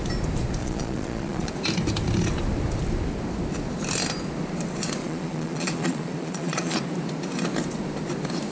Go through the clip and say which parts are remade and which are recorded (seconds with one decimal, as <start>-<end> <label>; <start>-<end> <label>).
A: 0.0-0.6 recorded; 0.6-1.5 remade; 1.5-5.0 recorded; 5.0-6.8 remade; 6.8-8.5 recorded